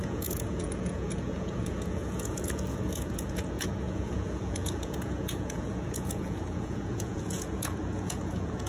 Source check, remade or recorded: remade